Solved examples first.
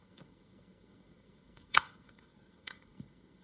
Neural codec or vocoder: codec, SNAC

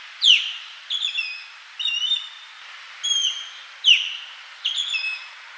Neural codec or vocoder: none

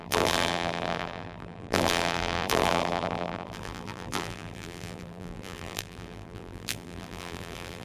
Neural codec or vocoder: vocoder, BigVGAN v2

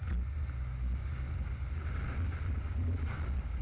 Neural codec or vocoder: none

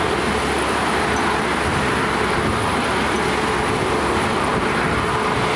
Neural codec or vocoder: none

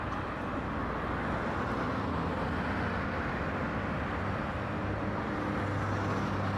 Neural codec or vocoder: none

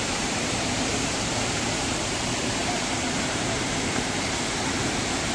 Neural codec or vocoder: vocoder, BigVGAN v2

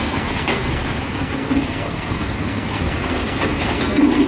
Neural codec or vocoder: codec, SNAC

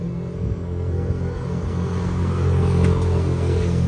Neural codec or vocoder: codec, SNAC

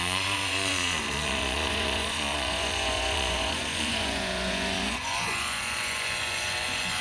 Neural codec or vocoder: vocoder, Vocos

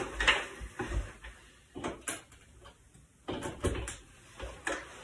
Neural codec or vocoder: none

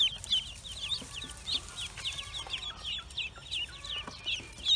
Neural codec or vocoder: none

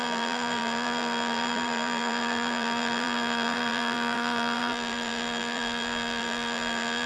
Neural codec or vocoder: vocoder, BigVGAN v2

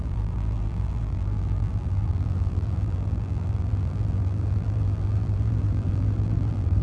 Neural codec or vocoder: vocoder, BigVGAN v2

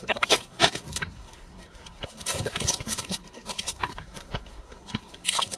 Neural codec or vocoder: codec, SNAC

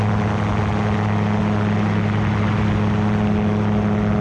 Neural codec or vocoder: none